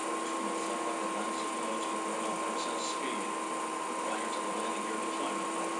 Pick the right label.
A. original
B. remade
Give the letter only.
A